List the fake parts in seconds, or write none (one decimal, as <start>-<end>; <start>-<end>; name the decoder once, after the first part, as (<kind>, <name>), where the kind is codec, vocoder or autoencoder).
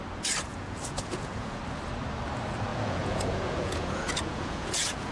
0.5-1.6 (vocoder, Vocos); 2.7-5.1